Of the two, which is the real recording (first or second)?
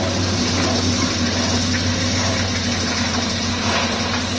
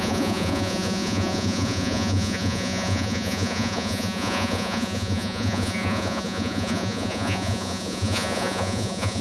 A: first